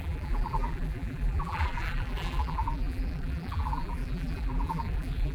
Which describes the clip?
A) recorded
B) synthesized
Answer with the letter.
B